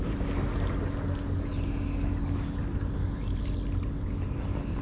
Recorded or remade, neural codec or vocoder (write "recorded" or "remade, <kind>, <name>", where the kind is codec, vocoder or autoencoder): recorded